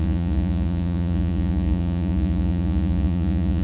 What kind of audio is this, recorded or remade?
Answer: remade